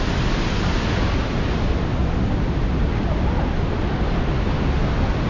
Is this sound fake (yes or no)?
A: no